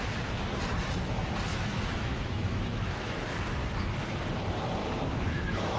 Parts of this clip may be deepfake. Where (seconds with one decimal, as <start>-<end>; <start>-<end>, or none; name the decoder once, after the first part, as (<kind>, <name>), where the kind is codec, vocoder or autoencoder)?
1.5-3.2 (autoencoder, DAC-VAE); 3.6-4.2; 4.8-5.8